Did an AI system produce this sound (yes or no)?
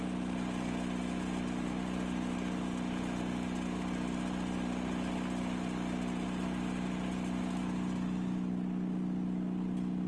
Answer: no